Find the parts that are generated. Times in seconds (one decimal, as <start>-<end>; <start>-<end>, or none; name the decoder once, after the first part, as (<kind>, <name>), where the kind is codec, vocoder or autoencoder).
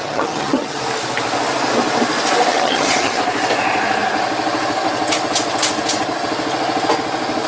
0.0-0.8 (vocoder, HiFi-GAN); 2.5-3.2